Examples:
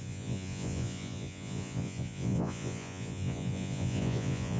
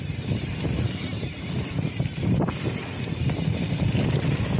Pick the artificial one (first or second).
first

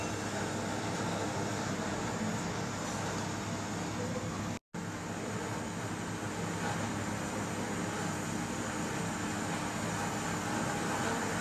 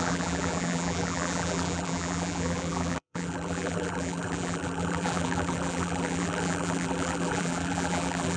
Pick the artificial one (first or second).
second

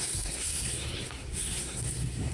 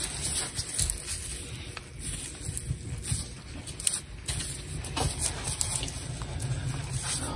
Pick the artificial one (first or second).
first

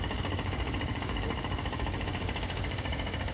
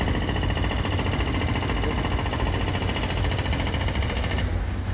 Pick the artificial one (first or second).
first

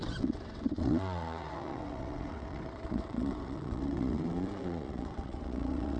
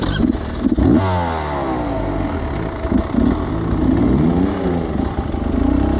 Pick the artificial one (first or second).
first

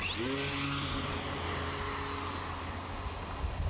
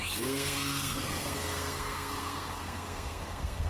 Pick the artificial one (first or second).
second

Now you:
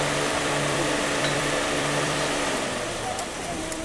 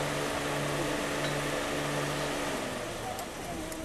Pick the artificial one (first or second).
first